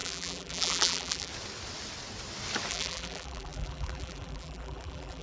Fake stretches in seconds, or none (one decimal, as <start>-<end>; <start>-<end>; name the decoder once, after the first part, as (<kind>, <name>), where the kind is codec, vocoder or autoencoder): 0.0-1.3 (vocoder, BigVGAN v2); 2.7-5.2